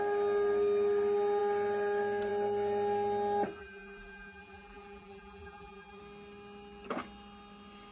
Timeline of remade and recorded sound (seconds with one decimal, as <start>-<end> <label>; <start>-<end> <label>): 0.0-3.6 recorded; 3.6-6.0 remade; 6.0-7.9 recorded